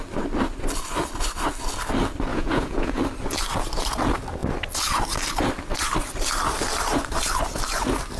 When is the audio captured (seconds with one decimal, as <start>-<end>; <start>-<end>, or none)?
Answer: 0.0-2.3; 3.0-8.2

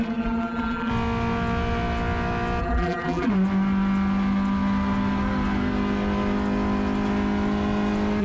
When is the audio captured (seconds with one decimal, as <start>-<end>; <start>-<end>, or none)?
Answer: 0.9-2.6; 3.3-8.2

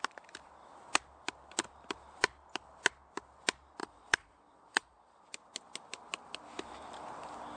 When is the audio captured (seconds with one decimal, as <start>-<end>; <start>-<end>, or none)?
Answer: 0.0-3.8; 5.2-7.6

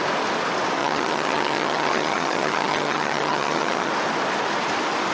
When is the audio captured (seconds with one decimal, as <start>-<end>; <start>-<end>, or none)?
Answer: 0.0-0.8; 3.9-5.1

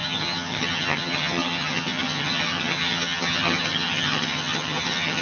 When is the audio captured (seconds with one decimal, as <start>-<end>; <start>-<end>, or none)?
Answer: none

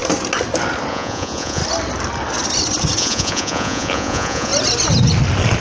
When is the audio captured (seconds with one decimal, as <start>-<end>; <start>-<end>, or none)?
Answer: 0.0-0.9; 1.6-3.0; 4.5-5.6

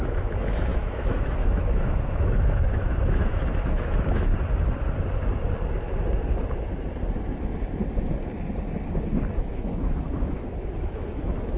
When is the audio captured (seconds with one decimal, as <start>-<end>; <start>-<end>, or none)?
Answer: 4.3-9.4